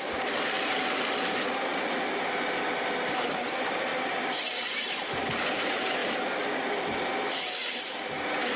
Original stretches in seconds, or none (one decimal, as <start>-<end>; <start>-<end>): 0.0-3.9; 5.0-6.0; 8.2-8.6

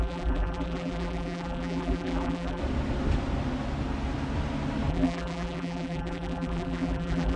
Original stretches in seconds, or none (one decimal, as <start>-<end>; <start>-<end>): 2.6-4.9

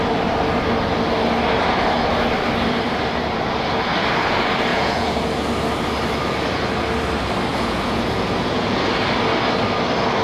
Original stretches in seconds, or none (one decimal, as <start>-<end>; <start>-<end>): 0.0-4.7; 5.3-7.5; 8.9-10.2

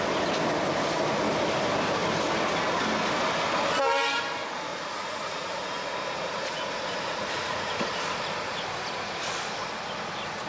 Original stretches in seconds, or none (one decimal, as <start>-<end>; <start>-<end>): 0.0-4.7; 7.7-10.5

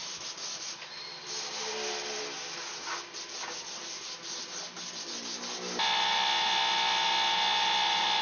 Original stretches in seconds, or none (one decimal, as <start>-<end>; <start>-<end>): 0.6-8.2

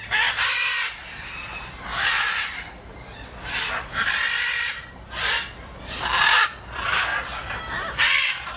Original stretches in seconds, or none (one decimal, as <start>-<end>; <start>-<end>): 0.0-1.9; 5.3-7.1